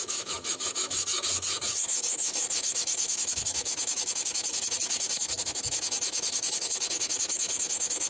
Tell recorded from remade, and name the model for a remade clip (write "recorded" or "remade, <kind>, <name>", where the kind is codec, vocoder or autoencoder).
remade, autoencoder, DAC-VAE